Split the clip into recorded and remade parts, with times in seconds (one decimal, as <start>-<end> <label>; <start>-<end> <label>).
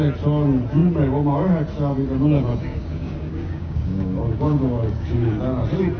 0.0-2.6 recorded; 2.6-5.3 remade; 5.3-6.0 recorded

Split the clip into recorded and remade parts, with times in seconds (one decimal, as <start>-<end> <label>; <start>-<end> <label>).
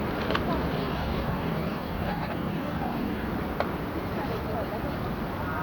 0.0-0.8 recorded; 0.8-3.3 remade; 3.3-5.6 recorded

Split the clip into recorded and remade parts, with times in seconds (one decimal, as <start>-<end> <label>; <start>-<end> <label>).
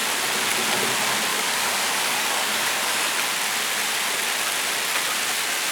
0.0-1.3 recorded; 1.3-3.1 remade; 3.1-5.7 recorded